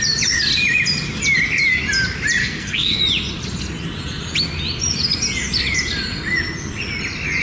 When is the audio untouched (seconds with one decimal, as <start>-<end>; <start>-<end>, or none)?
0.0-2.4; 3.0-7.4